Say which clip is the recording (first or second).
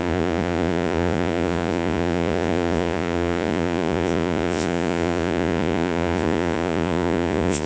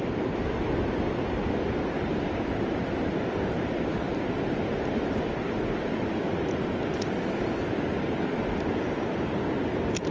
second